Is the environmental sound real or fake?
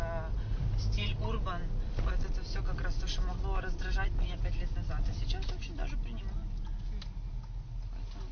real